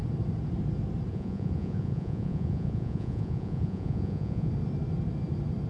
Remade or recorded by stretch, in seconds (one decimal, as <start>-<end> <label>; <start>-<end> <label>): 0.0-1.1 recorded; 1.1-4.5 remade; 4.5-5.7 recorded